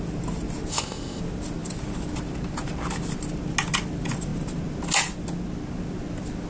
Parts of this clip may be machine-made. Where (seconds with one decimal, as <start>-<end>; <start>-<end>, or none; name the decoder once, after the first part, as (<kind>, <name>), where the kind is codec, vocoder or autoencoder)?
0.7-1.2 (codec, ZipCodec)